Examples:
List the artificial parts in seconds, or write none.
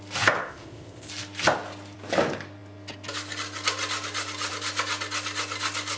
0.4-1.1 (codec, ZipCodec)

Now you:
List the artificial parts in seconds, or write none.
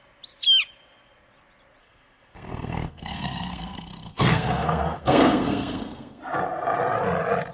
1.8-6.2 (codec, SNAC)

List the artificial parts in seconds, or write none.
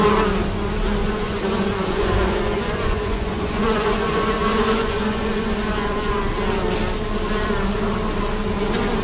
1.0-6.2 (vocoder, Vocos)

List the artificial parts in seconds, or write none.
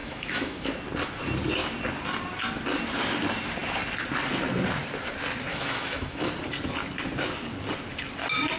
0.0-0.7 (autoencoder, DAC-VAE); 5.5-6.3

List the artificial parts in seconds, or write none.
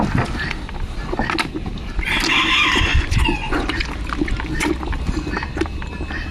2.9-3.8 (vocoder, Vocos)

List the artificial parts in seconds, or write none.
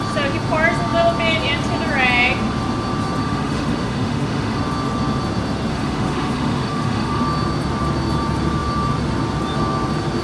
3.2-4.6 (autoencoder, DAC-VAE); 5.7-7.2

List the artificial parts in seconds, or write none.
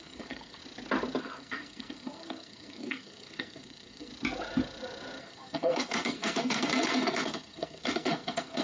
0.0-0.6 (codec, SNAC); 1.2-4.1; 5.2-8.6